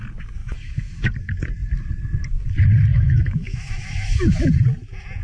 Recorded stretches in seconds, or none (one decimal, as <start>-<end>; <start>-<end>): 0.0-0.4; 1.1-2.9; 4.5-5.2